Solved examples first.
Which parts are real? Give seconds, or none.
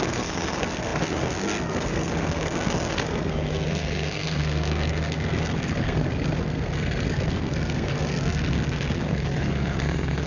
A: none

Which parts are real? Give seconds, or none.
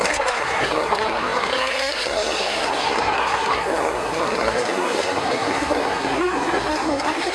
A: none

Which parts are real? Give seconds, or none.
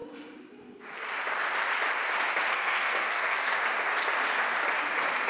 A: 0.0-2.5; 3.6-5.3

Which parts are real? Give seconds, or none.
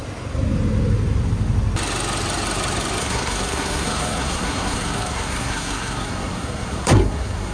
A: 0.0-3.0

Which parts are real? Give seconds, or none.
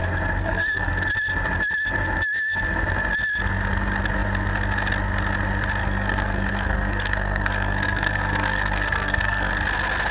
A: 0.0-0.4; 0.9-5.8; 9.5-10.1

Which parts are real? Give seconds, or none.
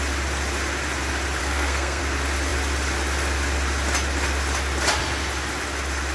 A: 0.0-1.4; 2.0-6.1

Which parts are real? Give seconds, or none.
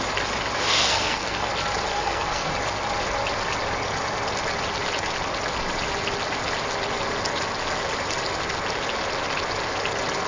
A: 0.0-0.7; 1.5-1.9; 2.5-10.3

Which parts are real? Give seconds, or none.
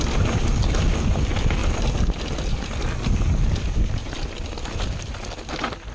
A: 0.0-5.9